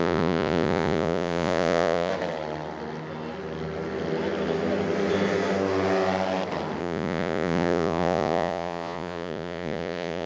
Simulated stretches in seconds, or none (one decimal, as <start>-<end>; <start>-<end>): 0.0-2.1; 6.8-10.3

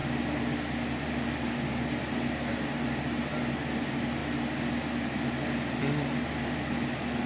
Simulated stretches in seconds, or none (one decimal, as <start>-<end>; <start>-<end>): none

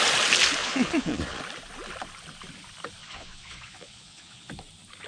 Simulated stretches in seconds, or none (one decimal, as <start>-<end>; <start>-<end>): 0.6-1.4; 3.0-4.5